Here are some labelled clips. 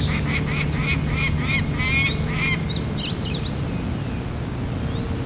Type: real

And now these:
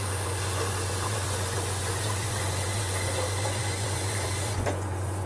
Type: fake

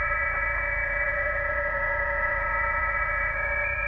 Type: fake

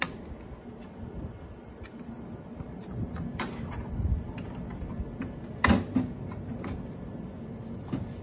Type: real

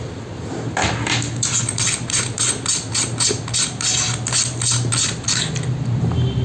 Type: real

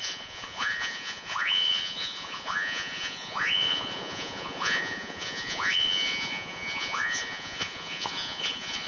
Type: fake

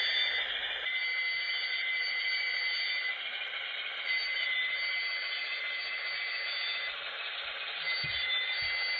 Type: real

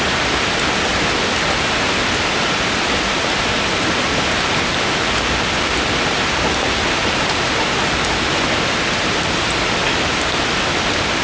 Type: real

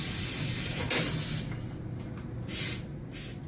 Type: real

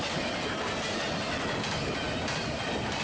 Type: real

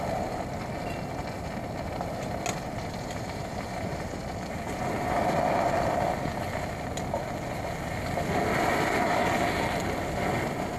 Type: real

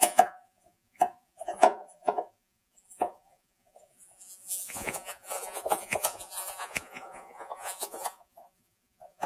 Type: fake